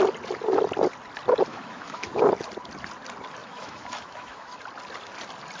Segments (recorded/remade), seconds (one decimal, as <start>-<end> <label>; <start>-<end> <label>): 0.0-1.5 recorded; 1.5-2.2 remade; 2.2-3.4 recorded; 3.4-4.6 remade; 4.6-5.6 recorded